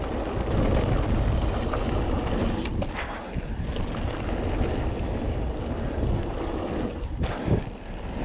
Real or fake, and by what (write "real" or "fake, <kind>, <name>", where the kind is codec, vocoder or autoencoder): real